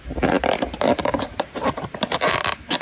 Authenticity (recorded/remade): remade